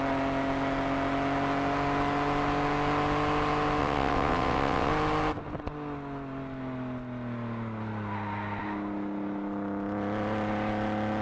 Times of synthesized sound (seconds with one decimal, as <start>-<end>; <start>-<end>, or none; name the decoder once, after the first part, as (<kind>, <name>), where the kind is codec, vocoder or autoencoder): 3.8-4.9 (vocoder, WaveNeXt)